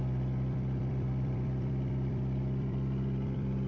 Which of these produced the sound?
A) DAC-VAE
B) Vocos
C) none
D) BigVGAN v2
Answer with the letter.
D